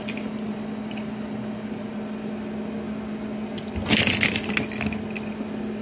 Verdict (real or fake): real